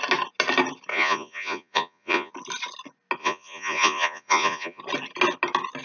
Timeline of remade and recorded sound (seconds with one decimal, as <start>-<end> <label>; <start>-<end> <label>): 0.0-0.9 recorded; 0.9-2.3 remade; 2.3-3.2 recorded; 3.2-4.8 remade; 4.8-5.8 recorded